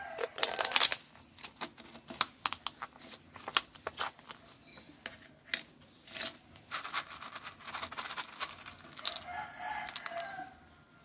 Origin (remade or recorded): recorded